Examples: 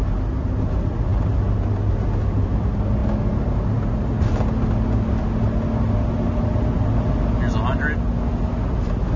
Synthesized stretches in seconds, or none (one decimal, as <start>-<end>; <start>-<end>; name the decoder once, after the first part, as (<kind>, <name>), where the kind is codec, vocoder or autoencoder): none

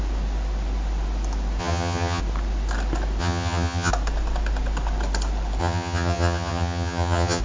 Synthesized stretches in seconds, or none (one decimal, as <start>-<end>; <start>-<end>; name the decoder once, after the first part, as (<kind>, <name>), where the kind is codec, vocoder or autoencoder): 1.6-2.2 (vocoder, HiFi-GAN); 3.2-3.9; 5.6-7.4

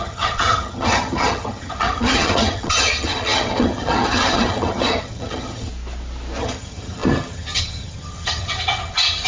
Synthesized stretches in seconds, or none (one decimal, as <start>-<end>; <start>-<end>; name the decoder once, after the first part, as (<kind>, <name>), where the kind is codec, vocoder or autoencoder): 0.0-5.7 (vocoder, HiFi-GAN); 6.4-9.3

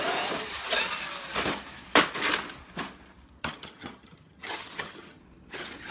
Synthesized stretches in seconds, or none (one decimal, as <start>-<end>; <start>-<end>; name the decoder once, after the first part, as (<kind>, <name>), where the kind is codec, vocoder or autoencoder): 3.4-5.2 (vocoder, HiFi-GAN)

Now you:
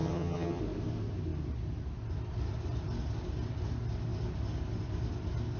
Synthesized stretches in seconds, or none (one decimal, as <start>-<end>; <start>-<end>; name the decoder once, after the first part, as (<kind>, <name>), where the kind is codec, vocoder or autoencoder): 0.0-0.6 (vocoder, HiFi-GAN)